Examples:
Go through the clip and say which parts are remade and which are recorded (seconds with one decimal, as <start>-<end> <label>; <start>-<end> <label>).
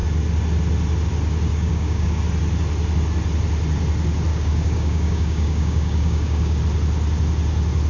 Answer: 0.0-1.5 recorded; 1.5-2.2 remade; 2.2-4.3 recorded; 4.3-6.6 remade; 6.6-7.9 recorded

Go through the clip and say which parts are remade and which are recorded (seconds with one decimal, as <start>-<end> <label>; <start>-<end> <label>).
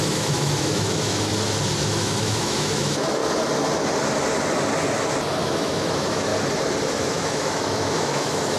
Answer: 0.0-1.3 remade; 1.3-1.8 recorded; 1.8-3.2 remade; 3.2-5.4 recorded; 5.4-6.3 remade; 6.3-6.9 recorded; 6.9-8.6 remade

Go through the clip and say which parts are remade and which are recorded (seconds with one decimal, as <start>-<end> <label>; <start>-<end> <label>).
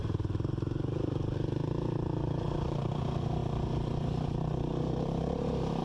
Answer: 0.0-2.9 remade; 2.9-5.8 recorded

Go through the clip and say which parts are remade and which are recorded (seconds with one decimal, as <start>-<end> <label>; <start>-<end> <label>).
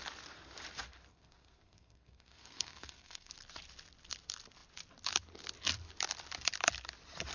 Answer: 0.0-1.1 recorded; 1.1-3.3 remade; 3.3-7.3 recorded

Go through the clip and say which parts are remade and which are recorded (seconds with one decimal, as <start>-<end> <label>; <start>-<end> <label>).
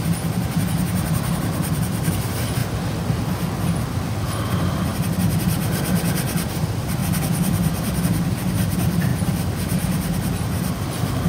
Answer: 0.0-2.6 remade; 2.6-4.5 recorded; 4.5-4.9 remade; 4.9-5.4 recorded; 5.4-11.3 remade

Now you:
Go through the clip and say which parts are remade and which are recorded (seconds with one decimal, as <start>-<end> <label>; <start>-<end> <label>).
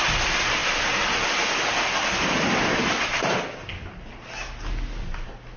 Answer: 0.0-5.6 recorded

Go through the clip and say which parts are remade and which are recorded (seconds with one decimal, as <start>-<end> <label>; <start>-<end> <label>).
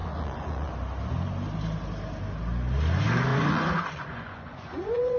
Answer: 0.0-0.7 remade; 0.7-3.3 recorded; 3.3-5.2 remade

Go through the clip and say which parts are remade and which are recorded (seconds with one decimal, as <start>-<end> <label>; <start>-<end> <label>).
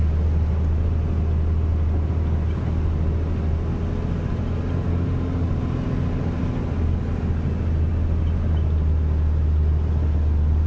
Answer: 0.0-10.7 recorded